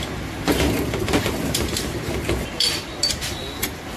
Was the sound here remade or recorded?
remade